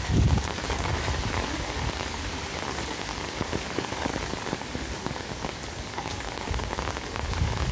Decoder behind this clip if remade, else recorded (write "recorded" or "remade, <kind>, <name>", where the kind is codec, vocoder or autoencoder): remade, codec, DAC